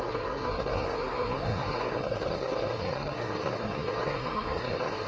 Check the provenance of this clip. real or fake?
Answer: fake